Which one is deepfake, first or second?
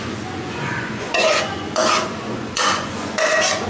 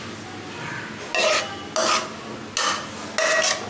first